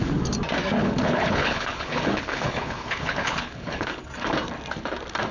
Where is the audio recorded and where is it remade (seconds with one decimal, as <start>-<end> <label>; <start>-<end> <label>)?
0.0-0.8 recorded; 0.8-4.0 remade; 4.0-5.3 recorded